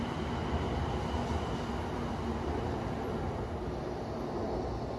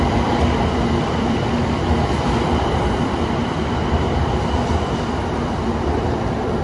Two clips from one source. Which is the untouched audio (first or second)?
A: first